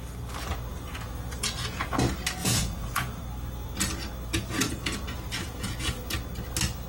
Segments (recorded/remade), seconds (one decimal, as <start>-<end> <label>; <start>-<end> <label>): 0.0-0.7 recorded; 0.7-1.9 remade; 1.9-2.4 recorded; 2.4-3.2 remade; 3.2-4.3 recorded; 4.3-6.0 remade; 6.0-6.9 recorded